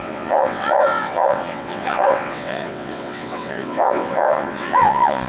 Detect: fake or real fake